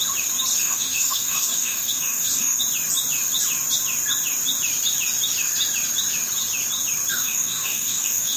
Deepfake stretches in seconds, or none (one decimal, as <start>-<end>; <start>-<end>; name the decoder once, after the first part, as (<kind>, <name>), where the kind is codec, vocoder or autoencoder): 0.5-2.6 (codec, DAC); 7.1-8.4